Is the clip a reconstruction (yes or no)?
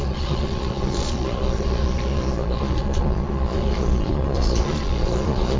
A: yes